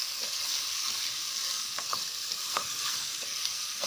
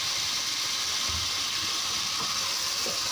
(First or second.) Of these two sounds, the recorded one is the second